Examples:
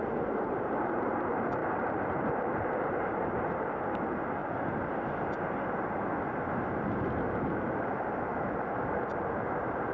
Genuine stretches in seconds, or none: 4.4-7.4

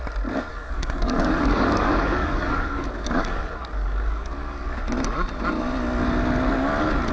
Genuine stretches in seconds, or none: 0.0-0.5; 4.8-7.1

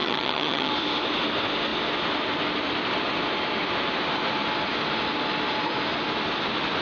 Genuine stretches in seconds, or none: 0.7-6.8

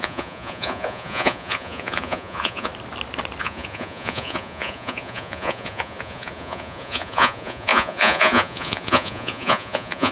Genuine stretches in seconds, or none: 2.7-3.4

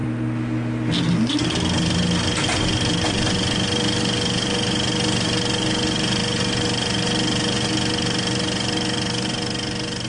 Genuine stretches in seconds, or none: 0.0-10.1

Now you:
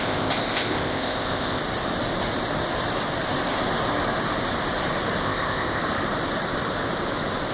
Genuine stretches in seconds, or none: 1.6-5.2; 5.8-7.5